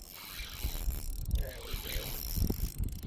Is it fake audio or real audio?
real